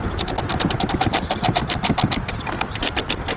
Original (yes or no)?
yes